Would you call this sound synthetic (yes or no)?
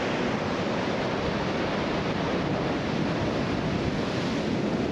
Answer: no